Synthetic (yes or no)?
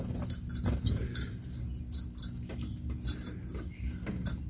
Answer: no